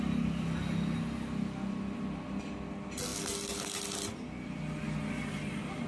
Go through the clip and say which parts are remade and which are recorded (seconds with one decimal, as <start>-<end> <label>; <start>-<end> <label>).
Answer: 0.0-5.9 recorded